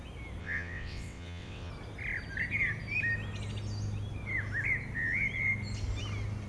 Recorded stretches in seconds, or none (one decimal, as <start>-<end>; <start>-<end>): 0.0-0.4; 1.7-6.5